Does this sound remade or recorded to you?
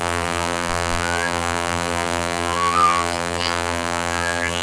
remade